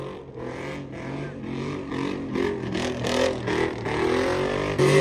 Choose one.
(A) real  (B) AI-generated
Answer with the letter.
A